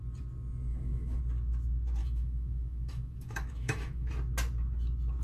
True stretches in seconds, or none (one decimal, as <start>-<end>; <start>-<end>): 0.0-0.7; 1.2-2.0; 4.1-5.2